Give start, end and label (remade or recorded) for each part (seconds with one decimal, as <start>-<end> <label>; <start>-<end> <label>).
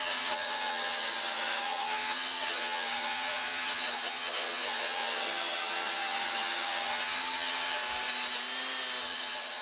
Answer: 0.0-7.8 remade; 7.8-9.0 recorded; 9.0-9.6 remade